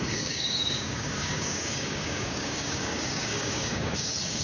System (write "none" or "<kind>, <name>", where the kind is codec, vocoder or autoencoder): codec, DAC